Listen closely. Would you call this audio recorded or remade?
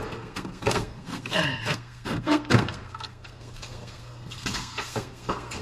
remade